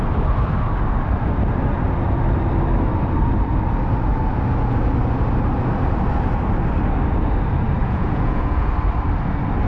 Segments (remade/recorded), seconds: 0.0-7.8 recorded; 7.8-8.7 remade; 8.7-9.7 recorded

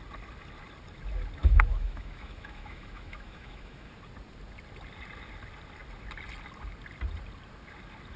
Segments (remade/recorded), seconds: 0.0-1.4 recorded; 1.4-4.0 remade; 4.0-8.2 recorded